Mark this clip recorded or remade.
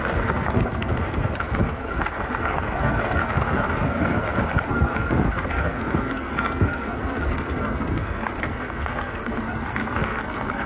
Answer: remade